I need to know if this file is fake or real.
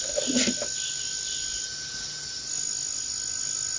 real